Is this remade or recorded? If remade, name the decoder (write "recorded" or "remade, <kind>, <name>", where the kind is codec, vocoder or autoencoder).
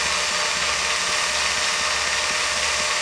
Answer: recorded